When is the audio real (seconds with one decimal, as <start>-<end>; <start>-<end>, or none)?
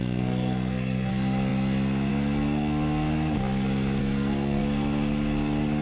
1.1-4.0; 4.6-5.8